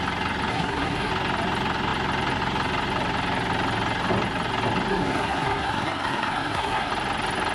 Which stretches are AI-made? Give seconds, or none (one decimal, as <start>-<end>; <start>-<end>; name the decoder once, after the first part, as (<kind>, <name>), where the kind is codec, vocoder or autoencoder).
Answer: 0.5-1.1 (codec, SNAC); 4.9-6.9